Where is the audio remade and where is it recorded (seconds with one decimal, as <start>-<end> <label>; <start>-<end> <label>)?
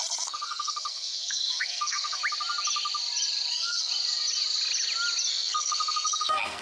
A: 0.0-2.2 remade; 2.2-3.5 recorded; 3.5-3.9 remade; 3.9-5.3 recorded; 5.3-6.6 remade